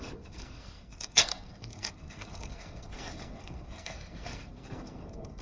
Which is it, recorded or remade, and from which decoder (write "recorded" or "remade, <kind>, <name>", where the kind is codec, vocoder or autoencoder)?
remade, codec, SNAC